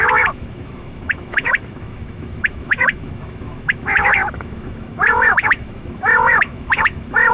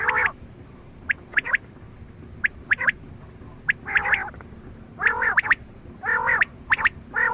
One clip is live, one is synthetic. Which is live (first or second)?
second